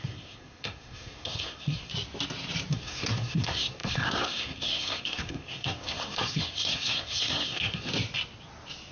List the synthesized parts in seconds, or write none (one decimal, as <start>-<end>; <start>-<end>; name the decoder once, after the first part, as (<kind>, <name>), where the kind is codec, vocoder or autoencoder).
0.0-1.9 (codec, SNAC); 2.7-7.9